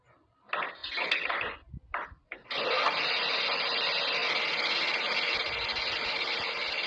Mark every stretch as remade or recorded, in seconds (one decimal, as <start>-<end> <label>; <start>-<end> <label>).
0.0-6.9 recorded